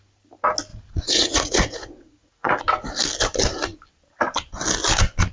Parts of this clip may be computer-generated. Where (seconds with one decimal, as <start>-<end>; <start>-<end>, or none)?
0.7-2.6